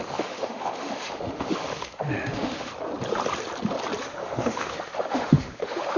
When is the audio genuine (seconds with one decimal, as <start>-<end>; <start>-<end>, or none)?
2.7-4.0